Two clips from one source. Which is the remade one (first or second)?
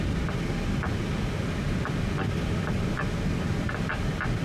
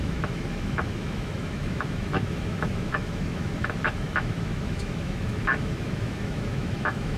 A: second